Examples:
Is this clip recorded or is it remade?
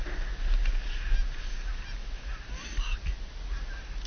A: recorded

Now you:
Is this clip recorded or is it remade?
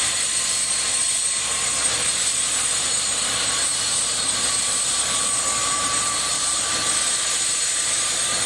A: remade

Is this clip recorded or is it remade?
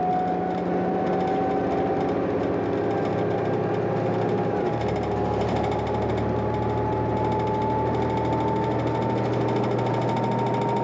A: recorded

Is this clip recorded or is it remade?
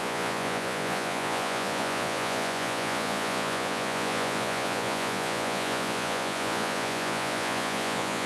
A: remade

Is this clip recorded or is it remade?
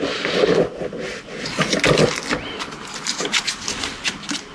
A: recorded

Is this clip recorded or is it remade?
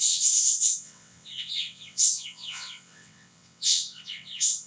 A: remade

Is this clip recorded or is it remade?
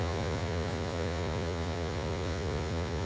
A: remade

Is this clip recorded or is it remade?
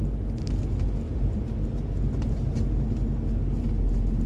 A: recorded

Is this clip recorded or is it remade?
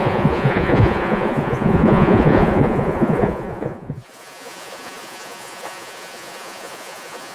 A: remade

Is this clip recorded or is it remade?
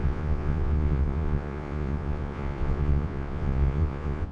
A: remade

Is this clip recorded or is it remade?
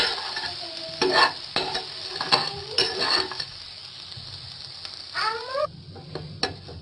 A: recorded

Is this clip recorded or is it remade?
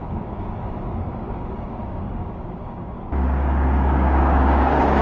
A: remade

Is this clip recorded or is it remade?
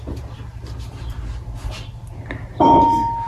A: recorded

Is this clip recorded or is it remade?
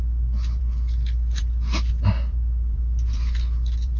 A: recorded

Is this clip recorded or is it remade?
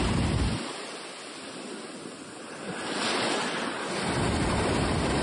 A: recorded